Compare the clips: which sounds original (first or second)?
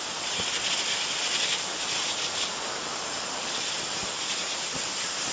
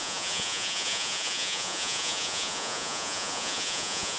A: first